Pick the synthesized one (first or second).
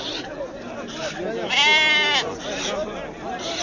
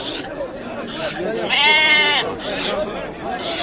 second